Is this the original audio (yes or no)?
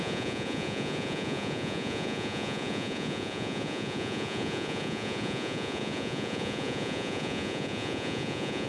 no